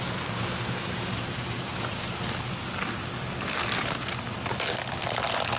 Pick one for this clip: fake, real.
real